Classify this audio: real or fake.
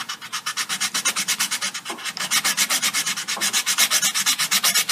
real